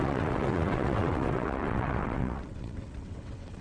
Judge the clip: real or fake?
fake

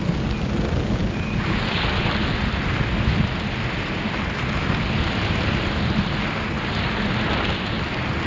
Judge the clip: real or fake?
real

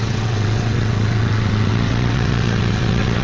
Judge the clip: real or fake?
fake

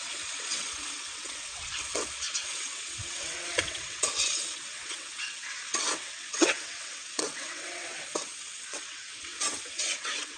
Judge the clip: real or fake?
fake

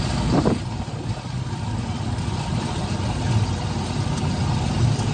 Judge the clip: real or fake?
real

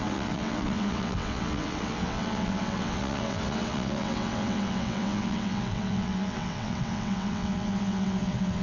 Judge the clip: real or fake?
fake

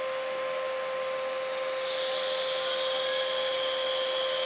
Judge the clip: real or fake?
real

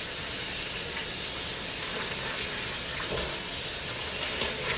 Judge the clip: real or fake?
real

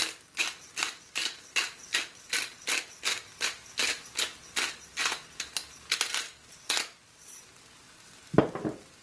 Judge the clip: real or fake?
real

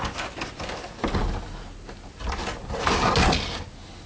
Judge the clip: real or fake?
real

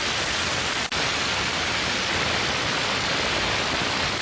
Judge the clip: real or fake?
real